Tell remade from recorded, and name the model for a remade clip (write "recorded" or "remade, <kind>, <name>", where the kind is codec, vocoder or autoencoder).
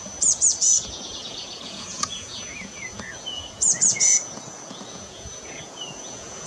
remade, vocoder, Vocos